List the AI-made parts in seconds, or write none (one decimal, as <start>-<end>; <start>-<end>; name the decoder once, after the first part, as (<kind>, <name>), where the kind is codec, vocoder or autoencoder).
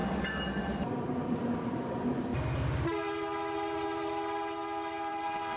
0.5-2.3 (vocoder, BigVGAN v2); 5.1-5.6